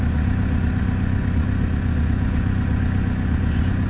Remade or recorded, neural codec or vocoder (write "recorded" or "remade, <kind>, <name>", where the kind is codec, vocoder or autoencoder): remade, vocoder, Vocos